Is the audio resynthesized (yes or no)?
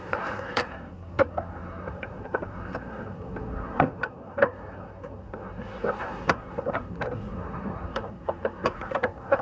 yes